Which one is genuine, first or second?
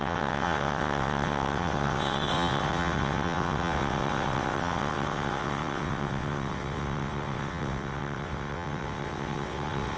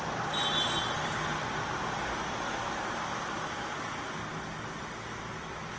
second